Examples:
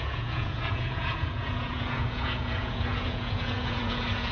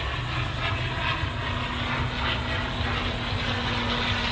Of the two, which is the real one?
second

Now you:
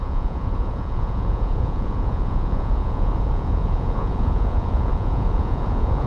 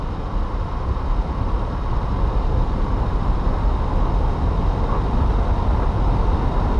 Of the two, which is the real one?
second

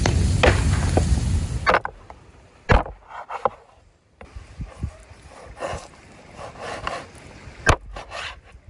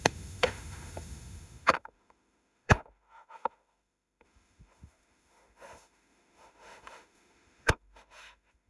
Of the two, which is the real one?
first